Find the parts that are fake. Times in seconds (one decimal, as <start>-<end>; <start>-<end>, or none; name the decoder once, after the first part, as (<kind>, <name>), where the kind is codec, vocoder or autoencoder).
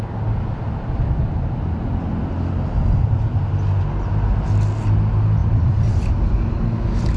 5.4-6.3 (vocoder, BigVGAN v2)